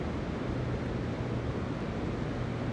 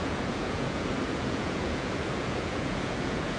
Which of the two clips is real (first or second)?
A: first